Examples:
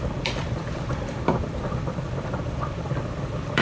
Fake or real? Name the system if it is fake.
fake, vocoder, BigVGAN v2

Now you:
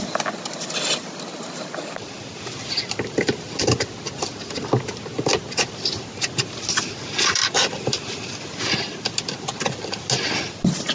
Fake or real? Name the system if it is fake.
real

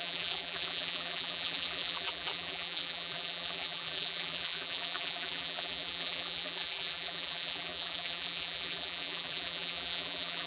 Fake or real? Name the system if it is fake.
fake, vocoder, BigVGAN v2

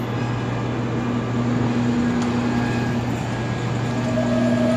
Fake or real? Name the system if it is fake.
real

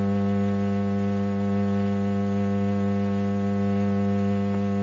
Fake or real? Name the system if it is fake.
real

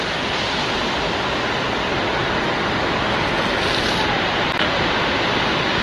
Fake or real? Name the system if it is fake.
real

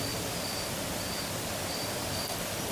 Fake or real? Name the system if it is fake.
real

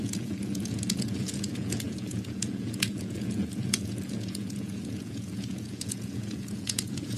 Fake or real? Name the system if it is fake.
fake, vocoder, Vocos